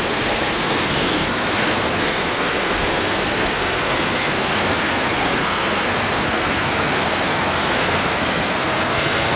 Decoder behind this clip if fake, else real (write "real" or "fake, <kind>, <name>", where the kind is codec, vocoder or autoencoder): fake, codec, SNAC